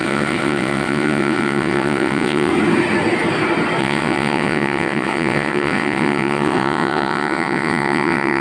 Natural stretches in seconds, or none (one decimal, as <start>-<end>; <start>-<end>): 2.5-3.8